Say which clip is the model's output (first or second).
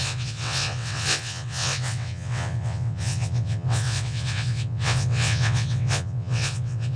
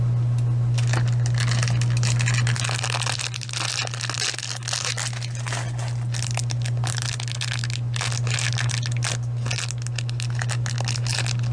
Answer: first